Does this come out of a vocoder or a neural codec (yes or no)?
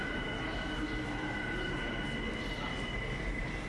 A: no